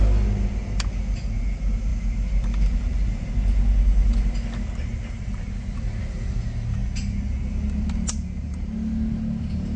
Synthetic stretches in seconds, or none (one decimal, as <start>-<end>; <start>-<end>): none